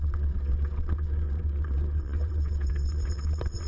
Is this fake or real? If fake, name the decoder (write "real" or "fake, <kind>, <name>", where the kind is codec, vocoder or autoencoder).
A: fake, vocoder, WaveNeXt